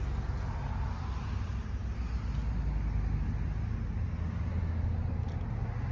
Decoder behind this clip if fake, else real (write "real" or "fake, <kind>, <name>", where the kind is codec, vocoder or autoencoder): real